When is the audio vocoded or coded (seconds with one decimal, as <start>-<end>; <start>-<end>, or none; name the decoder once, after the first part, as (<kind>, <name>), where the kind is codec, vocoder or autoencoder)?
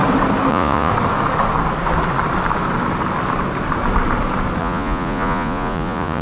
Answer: 0.5-0.9 (vocoder, Vocos); 4.6-6.2